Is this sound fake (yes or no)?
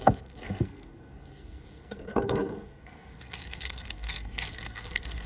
yes